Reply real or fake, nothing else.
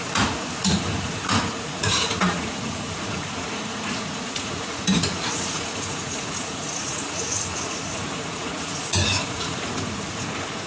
fake